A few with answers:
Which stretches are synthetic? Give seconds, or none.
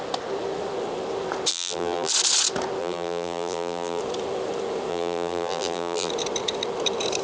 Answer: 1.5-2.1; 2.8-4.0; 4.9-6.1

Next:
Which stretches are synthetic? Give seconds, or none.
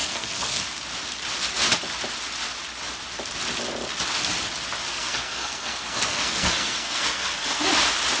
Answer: 0.0-0.6; 4.9-7.7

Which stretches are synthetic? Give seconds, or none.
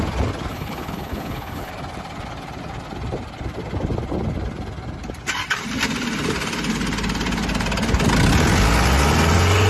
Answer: 0.5-1.7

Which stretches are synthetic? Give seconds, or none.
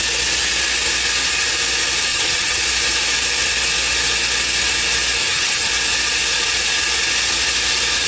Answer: 2.1-2.6; 5.2-5.7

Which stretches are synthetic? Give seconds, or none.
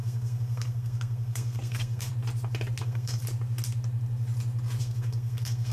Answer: 0.0-2.1; 2.8-3.2; 4.8-5.7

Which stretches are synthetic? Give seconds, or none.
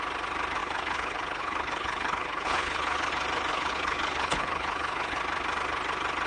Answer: 0.6-3.1; 3.5-5.2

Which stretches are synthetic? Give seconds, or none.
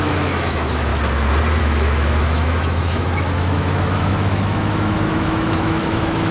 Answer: 0.0-0.9; 1.6-6.3